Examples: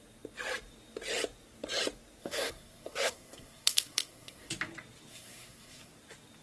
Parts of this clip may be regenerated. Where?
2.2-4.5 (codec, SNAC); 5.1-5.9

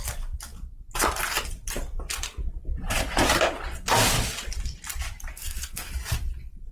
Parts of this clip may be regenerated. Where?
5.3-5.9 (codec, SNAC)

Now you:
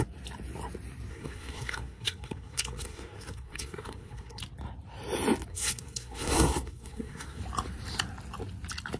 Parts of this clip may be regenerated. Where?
1.1-4.4 (codec, SNAC); 5.5-7.4

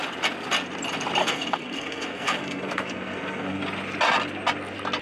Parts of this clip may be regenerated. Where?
1.2-3.6 (codec, SNAC)

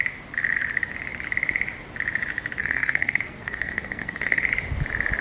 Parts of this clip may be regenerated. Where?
2.6-4.4 (codec, SNAC)

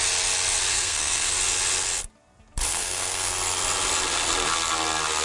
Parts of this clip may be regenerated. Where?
0.7-1.3 (codec, SNAC); 2.7-3.3

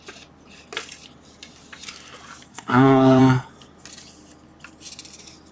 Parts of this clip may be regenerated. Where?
2.5-3.2 (codec, SNAC)

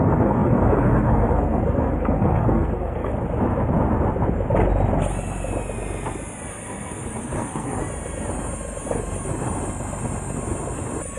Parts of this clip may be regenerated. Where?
0.0-3.1 (codec, SNAC); 6.5-7.8